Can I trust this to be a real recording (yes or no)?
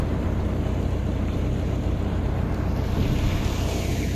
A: yes